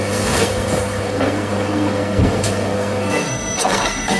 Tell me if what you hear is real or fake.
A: fake